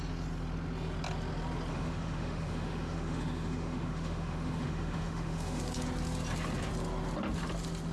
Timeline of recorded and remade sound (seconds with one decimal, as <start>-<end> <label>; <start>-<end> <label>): 0.0-1.7 recorded; 1.7-5.6 remade; 5.6-7.9 recorded